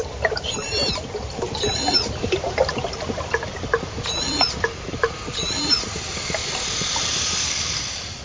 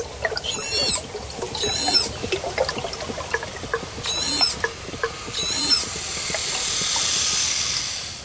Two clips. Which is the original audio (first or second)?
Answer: second